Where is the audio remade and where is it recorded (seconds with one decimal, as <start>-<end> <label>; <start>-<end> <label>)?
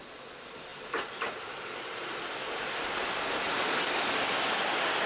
0.0-5.1 recorded